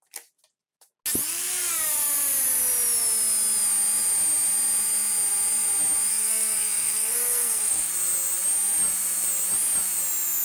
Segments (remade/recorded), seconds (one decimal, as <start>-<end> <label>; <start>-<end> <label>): 0.0-6.1 recorded; 6.1-7.9 remade; 7.9-10.4 recorded